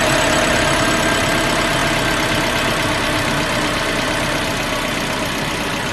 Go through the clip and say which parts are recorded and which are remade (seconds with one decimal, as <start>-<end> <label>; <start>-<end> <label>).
0.0-5.9 recorded